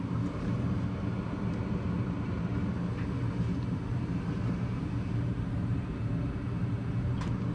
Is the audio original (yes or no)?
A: no